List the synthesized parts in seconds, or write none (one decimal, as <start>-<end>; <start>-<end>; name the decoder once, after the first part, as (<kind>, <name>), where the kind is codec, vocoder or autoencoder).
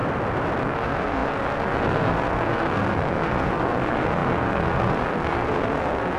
0.6-6.2 (codec, SNAC)